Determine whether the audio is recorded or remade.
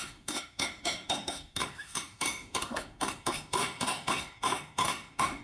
remade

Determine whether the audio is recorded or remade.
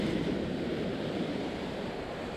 remade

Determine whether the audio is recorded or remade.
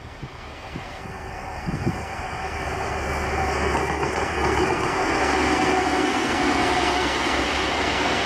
remade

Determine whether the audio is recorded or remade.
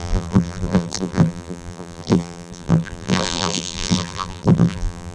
remade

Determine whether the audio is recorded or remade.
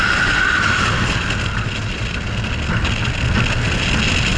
recorded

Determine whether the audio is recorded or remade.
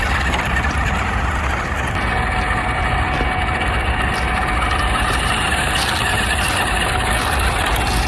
recorded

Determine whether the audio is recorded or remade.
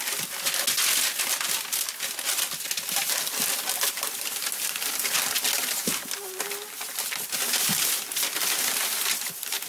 recorded